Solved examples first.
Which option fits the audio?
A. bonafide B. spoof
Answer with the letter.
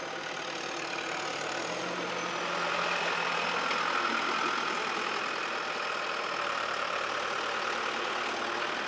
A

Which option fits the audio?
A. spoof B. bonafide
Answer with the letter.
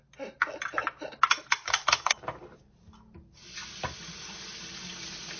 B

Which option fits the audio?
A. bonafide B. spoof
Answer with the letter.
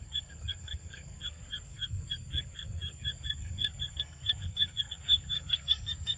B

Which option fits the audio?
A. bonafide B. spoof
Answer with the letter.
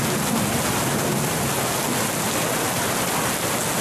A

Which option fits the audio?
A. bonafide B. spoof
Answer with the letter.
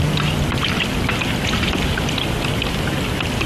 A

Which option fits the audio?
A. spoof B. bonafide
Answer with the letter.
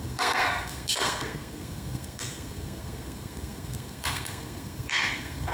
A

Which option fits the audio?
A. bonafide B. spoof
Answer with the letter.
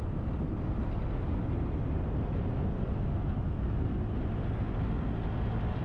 A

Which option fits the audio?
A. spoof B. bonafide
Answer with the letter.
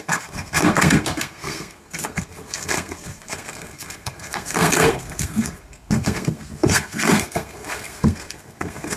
A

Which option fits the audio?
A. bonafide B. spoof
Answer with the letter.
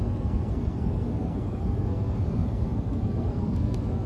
B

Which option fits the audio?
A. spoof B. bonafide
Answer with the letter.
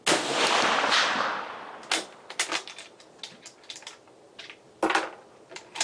B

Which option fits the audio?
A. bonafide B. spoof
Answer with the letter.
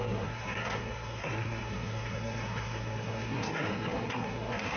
B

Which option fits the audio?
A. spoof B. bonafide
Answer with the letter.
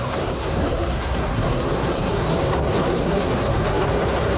A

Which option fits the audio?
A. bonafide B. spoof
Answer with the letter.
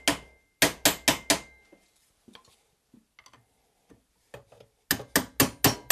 A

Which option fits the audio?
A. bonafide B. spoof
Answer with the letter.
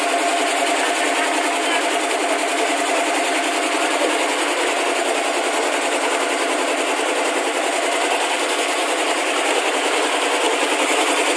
A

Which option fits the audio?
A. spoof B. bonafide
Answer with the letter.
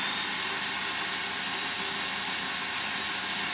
B